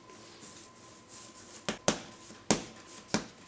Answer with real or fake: real